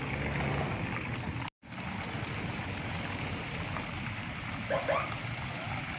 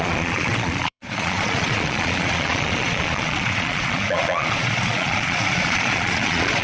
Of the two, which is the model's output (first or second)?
second